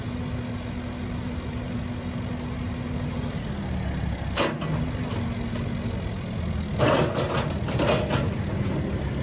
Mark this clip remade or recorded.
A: recorded